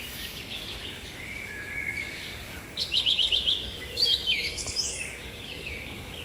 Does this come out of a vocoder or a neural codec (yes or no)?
yes